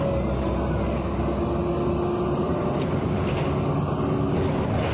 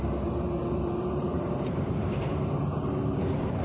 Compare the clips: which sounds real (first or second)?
first